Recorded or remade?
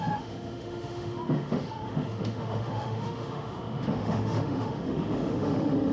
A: remade